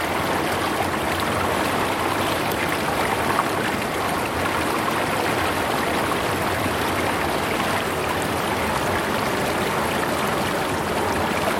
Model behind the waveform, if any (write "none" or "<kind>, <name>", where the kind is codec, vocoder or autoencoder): none